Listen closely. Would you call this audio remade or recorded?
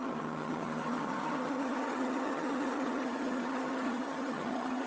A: remade